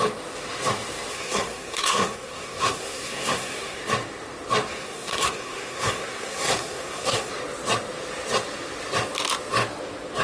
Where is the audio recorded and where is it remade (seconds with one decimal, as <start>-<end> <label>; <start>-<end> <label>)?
0.0-1.1 recorded; 1.1-3.8 remade; 3.8-4.7 recorded; 4.7-7.3 remade; 7.3-10.2 recorded

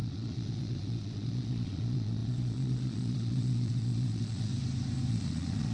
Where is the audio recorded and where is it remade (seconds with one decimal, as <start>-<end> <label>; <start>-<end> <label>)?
0.0-4.5 remade; 4.5-5.1 recorded; 5.1-5.7 remade

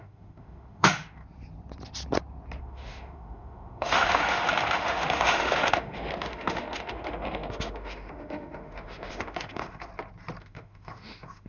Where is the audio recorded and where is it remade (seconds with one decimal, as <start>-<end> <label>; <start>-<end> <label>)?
0.0-1.2 remade; 1.2-2.6 recorded; 2.6-9.9 remade; 9.9-10.4 recorded; 10.4-11.5 remade

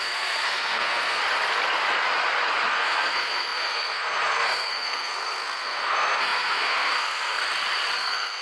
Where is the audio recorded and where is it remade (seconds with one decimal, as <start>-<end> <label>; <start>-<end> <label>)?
0.0-1.2 remade; 1.2-2.7 recorded; 2.7-7.4 remade; 7.4-8.0 recorded; 8.0-8.4 remade